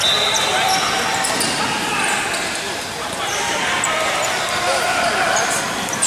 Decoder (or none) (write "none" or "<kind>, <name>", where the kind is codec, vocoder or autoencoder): none